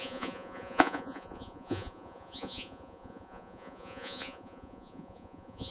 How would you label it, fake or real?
fake